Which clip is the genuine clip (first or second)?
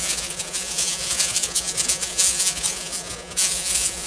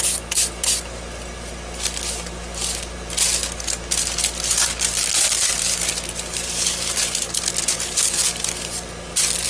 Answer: second